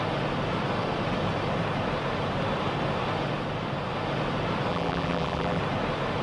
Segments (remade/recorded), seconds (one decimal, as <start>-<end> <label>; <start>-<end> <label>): 0.0-4.7 recorded; 4.7-5.6 remade; 5.6-6.2 recorded